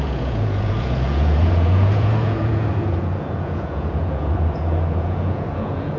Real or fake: fake